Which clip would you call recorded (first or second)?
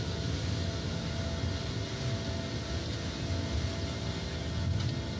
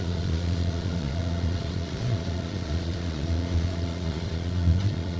first